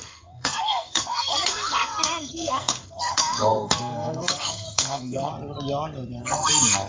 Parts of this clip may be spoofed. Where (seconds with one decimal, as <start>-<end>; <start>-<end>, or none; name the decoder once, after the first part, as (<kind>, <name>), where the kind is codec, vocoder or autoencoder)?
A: 0.0-5.3 (codec, SNAC); 6.2-6.9